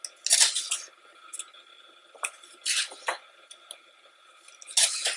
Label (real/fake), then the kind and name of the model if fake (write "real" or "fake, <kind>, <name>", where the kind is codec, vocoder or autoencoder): real